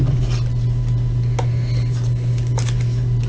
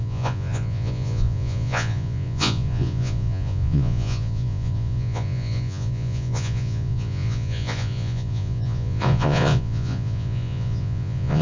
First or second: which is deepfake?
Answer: second